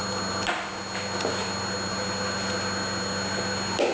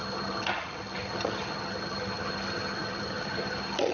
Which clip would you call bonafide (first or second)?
first